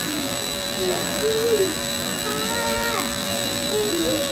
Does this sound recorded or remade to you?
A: remade